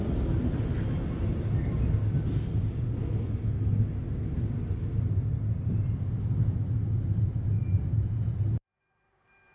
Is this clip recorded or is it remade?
recorded